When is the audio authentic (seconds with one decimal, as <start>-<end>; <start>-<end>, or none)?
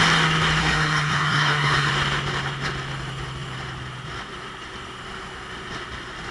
0.0-0.6; 1.9-6.3